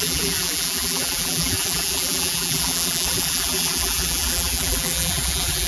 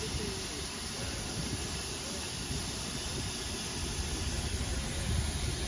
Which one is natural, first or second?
second